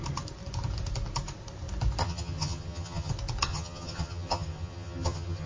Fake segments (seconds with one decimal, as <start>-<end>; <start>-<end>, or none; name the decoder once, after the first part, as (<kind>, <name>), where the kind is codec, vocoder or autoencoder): 2.0-3.1 (vocoder, HiFi-GAN); 3.5-5.5